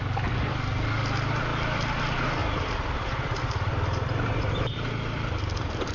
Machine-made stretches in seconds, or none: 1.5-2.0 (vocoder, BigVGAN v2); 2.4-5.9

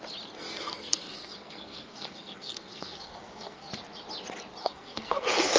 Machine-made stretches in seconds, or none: 0.4-3.7 (codec, SNAC); 4.6-5.6

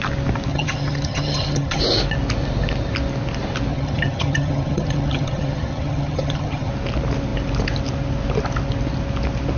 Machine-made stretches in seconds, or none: 0.5-1.8 (vocoder, HiFi-GAN); 3.7-6.7

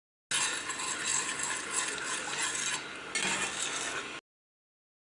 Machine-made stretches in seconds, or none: none